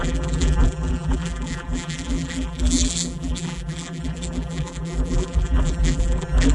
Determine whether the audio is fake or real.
fake